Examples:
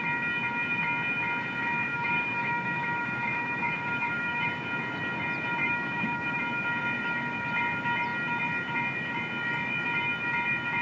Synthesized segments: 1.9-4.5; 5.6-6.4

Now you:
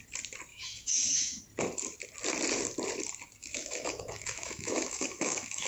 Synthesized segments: 0.5-1.4; 3.4-5.7

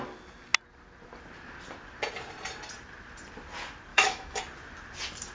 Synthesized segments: 3.9-4.4

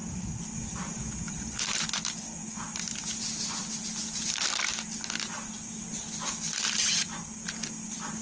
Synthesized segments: none